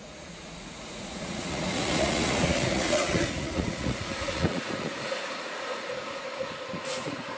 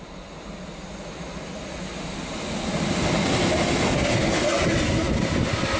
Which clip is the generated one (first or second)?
first